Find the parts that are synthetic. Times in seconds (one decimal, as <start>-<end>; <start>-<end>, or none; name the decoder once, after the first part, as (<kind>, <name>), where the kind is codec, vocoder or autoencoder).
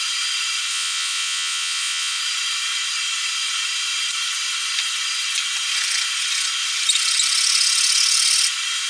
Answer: 0.7-2.2 (vocoder, Vocos)